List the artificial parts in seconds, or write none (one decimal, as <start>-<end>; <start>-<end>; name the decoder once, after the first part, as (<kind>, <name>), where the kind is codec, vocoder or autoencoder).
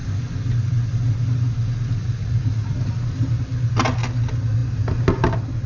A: 2.0-2.9 (vocoder, Vocos)